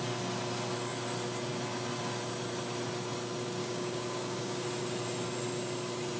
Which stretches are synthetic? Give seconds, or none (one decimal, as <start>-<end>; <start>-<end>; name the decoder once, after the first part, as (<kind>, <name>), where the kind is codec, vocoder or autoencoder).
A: 3.6-4.6 (codec, DAC)